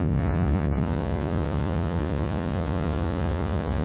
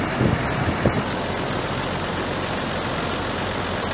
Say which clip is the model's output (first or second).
first